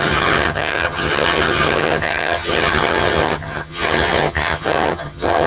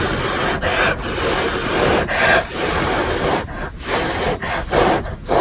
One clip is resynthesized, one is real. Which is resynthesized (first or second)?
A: first